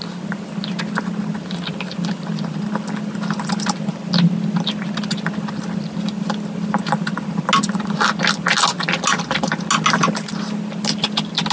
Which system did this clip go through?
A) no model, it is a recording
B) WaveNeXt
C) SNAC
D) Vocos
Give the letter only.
A